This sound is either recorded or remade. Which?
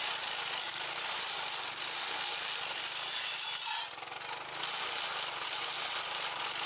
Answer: recorded